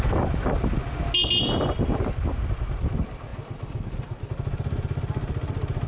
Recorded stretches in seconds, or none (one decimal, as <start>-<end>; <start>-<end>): 0.0-3.3; 4.3-5.9